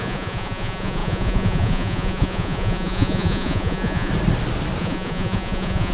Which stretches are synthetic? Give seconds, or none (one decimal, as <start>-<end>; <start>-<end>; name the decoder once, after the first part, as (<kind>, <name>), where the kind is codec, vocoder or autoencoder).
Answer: 0.0-4.1 (vocoder, Vocos); 4.8-5.9